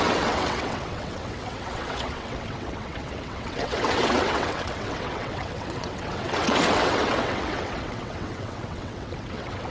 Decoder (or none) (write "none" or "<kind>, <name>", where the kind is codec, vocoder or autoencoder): vocoder, WaveNeXt